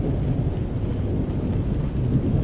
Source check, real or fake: real